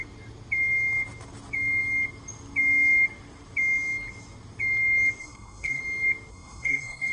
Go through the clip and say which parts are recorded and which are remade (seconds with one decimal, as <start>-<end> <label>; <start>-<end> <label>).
0.0-5.2 recorded; 5.2-5.8 remade; 5.8-6.3 recorded; 6.3-7.1 remade